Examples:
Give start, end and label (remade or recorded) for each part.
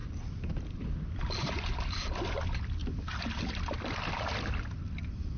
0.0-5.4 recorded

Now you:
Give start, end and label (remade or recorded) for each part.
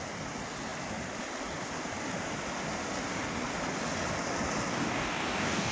0.0-4.7 recorded; 4.7-5.7 remade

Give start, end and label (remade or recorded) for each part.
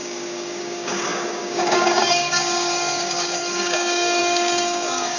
0.0-5.2 remade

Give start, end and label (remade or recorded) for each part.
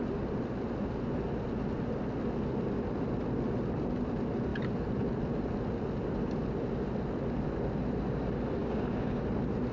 0.0-8.6 recorded; 8.6-9.2 remade; 9.2-9.7 recorded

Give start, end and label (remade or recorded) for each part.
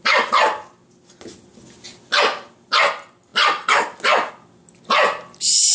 0.0-5.7 recorded